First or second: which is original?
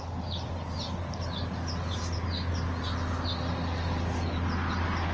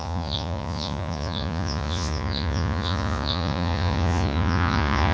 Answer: first